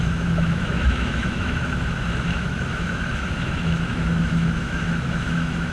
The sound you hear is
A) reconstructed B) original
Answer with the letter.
A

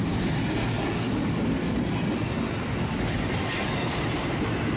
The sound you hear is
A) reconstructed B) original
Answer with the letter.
B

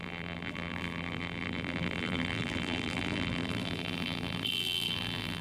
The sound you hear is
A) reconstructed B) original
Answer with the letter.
A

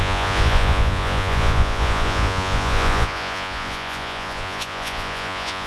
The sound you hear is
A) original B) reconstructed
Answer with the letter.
B